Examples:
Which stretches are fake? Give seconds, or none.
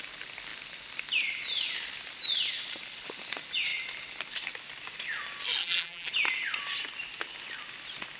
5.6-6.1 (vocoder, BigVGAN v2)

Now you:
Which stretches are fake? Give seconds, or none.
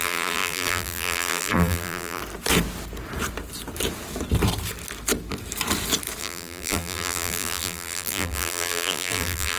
0.0-2.2 (vocoder, BigVGAN v2); 6.2-9.6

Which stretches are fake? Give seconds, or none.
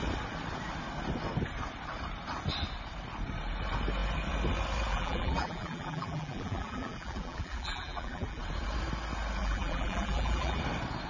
4.9-8.4 (vocoder, BigVGAN v2); 9.4-10.6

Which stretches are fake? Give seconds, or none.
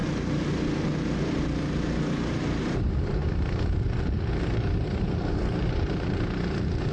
2.6-3.2 (vocoder, BigVGAN v2); 4.3-6.9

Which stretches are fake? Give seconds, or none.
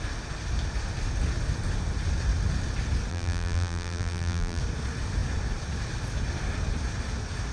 3.1-4.6 (vocoder, BigVGAN v2)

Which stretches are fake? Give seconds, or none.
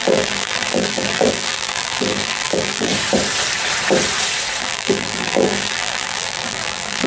0.0-2.9 (vocoder, BigVGAN v2); 4.6-7.1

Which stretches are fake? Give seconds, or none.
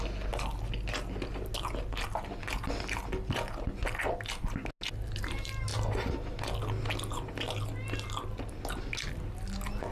none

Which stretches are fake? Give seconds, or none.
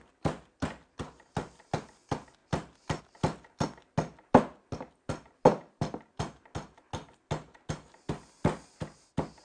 none